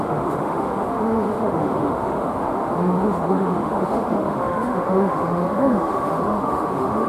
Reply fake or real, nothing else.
fake